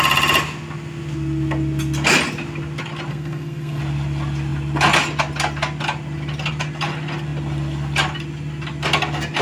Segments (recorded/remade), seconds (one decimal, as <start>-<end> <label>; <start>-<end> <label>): 0.0-3.1 recorded; 3.1-3.8 remade; 3.8-9.4 recorded